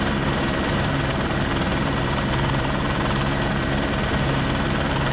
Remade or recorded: remade